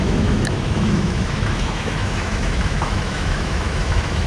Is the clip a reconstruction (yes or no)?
yes